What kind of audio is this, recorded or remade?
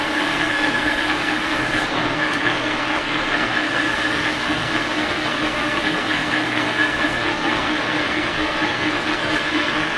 remade